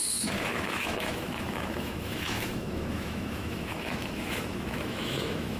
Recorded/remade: remade